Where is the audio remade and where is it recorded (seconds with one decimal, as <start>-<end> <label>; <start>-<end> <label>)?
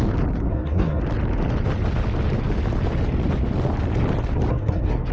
0.0-0.5 recorded; 0.5-1.0 remade; 1.0-4.5 recorded; 4.5-5.1 remade